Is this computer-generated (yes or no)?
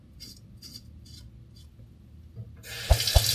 no